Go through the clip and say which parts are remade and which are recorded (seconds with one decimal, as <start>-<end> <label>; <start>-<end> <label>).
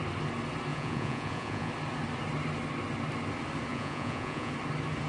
0.0-0.7 recorded; 0.7-1.7 remade; 1.7-3.7 recorded; 3.7-4.5 remade; 4.5-5.1 recorded